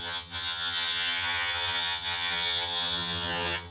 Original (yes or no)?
no